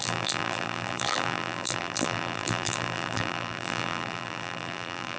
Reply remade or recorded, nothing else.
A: remade